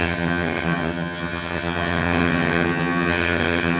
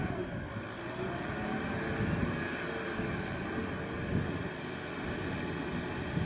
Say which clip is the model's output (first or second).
first